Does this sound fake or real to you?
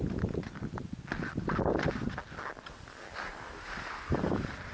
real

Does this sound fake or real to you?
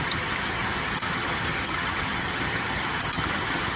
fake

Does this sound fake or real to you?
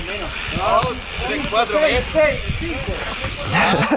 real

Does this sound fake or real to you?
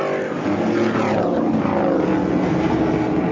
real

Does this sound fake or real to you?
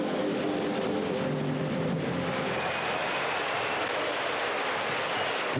real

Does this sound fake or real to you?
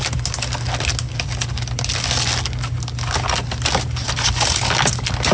real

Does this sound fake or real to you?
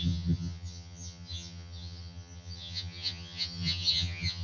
fake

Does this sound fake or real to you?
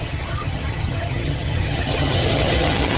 fake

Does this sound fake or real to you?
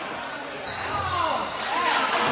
real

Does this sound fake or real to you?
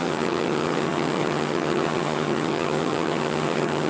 fake